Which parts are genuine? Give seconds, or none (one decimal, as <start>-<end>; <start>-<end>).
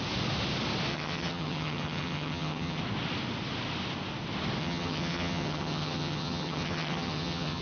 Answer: 0.0-0.9; 2.8-4.6